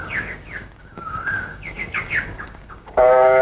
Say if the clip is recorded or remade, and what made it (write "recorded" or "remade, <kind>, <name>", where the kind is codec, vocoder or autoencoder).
remade, codec, DAC